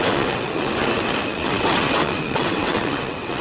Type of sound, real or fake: fake